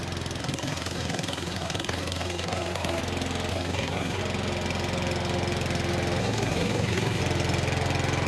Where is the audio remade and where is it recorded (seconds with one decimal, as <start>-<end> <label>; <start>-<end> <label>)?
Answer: 0.0-0.4 recorded; 0.4-3.0 remade; 3.0-3.5 recorded; 3.5-4.2 remade; 4.2-6.2 recorded; 6.2-7.2 remade; 7.2-8.3 recorded